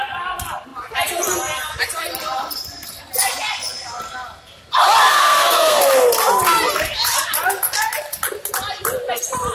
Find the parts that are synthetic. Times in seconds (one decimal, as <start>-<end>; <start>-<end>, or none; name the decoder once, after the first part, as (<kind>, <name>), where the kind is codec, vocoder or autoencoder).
5.1-5.8 (codec, SNAC)